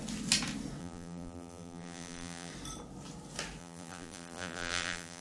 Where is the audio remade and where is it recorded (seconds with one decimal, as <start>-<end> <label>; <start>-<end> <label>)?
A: 0.0-0.8 recorded; 0.8-2.5 remade; 2.5-3.6 recorded; 3.6-5.2 remade